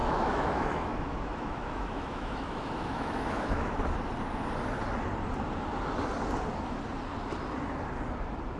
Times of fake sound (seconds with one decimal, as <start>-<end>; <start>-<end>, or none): 0.0-3.8